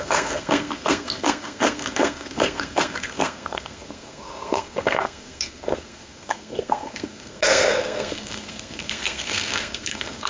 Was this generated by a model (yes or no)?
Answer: yes